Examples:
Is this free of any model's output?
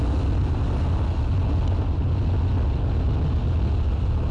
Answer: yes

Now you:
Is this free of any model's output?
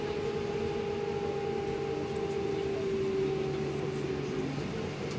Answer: yes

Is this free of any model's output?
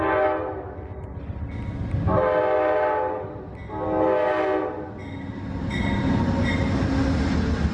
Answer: yes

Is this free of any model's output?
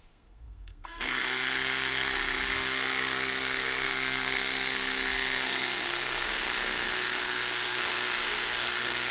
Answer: no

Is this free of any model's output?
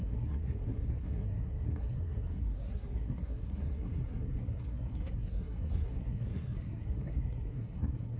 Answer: no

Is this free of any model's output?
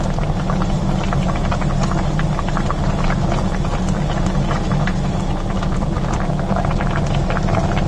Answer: yes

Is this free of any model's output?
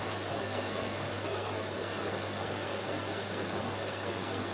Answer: no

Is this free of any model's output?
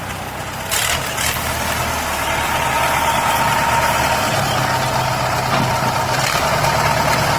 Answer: yes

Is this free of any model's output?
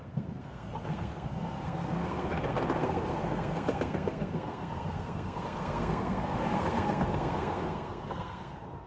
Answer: no